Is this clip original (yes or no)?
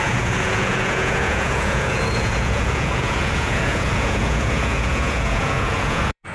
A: no